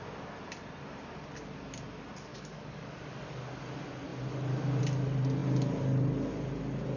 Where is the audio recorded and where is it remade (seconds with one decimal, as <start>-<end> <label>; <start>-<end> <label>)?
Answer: 0.0-2.3 recorded; 2.3-3.2 remade; 3.2-7.0 recorded